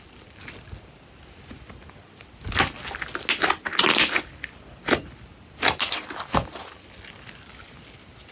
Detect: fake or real real